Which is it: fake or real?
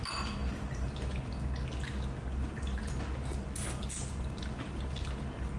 real